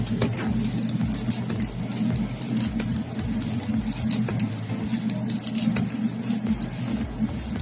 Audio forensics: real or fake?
real